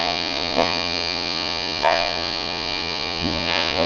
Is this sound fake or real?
fake